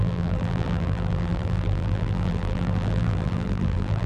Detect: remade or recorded remade